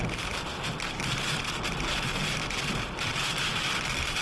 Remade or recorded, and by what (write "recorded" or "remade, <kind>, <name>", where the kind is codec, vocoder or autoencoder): recorded